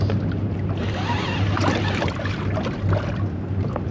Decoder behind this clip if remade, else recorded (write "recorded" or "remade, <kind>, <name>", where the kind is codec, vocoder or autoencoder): recorded